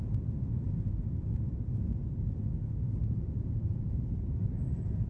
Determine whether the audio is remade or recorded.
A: remade